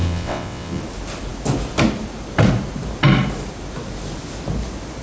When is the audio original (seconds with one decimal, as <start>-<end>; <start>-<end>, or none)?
0.8-5.0